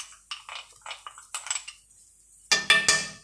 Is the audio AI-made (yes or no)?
no